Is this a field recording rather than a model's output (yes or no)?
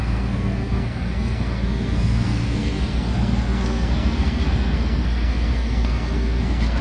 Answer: no